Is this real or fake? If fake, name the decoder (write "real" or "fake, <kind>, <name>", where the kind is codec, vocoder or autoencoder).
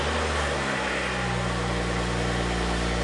real